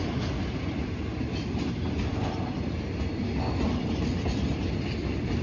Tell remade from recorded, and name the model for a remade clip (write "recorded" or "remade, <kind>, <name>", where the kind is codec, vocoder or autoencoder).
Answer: recorded